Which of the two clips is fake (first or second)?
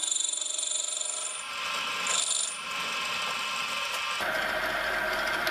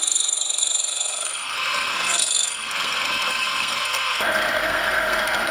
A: second